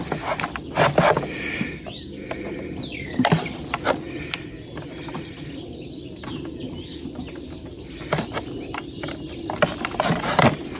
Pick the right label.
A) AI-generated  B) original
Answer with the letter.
B